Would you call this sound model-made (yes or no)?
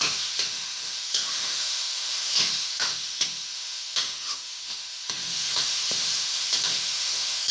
yes